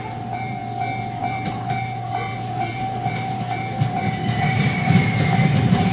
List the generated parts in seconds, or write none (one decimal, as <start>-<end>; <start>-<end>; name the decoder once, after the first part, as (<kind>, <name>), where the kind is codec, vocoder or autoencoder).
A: 0.0-0.6 (vocoder, BigVGAN v2); 1.2-5.9